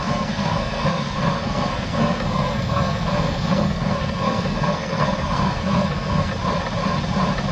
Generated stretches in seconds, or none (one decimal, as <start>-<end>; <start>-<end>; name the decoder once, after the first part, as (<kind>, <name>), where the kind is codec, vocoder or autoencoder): 0.0-6.3 (codec, SNAC)